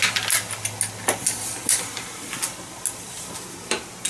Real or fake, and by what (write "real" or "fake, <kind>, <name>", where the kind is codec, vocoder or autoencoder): real